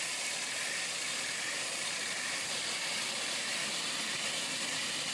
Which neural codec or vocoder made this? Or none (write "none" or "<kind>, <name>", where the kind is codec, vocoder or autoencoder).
vocoder, BigVGAN v2